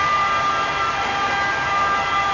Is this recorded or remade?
recorded